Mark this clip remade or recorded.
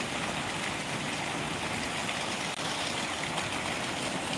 recorded